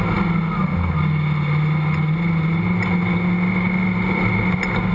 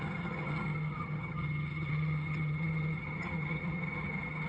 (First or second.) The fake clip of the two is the second